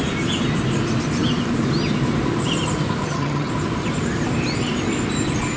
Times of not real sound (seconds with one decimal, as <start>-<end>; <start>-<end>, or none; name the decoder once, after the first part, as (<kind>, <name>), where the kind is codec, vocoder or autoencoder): 3.0-3.5 (vocoder, HiFi-GAN)

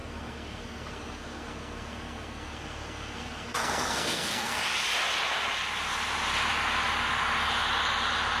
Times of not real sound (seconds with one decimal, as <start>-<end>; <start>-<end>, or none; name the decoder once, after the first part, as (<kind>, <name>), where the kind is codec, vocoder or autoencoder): 0.0-4.6 (codec, SNAC)

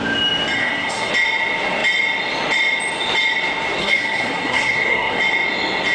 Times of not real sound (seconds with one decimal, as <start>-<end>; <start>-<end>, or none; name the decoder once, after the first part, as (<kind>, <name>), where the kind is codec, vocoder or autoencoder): 0.6-1.1 (codec, SNAC); 3.8-5.2

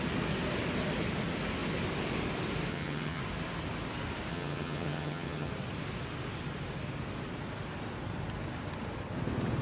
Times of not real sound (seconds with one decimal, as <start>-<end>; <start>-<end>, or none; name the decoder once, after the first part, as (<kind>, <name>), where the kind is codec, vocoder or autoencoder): 2.7-3.2 (vocoder, HiFi-GAN); 4.3-5.5